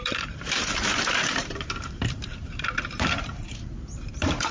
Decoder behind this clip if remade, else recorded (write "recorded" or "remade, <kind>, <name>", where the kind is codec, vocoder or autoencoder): remade, vocoder, BigVGAN v2